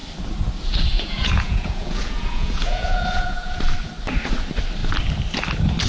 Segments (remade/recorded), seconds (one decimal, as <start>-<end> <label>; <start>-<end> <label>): 0.0-0.9 recorded; 0.9-3.6 remade; 3.6-5.9 recorded